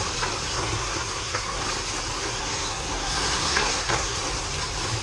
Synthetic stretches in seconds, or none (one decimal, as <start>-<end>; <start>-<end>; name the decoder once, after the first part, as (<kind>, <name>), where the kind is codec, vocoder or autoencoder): 0.5-1.6 (codec, SNAC); 2.4-4.2